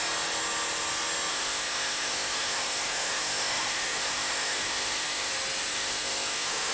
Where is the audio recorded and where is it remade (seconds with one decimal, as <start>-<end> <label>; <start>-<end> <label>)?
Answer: 0.0-1.3 recorded; 1.3-5.3 remade; 5.3-5.7 recorded; 5.7-6.7 remade